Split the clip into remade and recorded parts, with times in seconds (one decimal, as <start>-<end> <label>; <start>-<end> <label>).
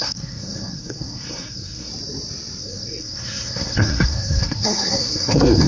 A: 0.0-1.9 remade; 1.9-2.6 recorded; 2.6-5.7 remade